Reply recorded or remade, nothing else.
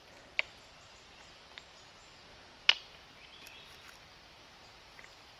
recorded